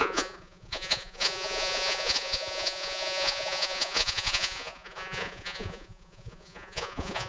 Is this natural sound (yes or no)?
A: no